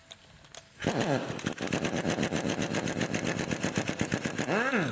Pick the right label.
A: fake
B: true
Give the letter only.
B